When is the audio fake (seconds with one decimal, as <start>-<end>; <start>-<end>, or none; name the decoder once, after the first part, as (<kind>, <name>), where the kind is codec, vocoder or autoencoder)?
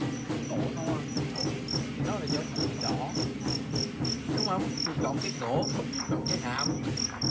none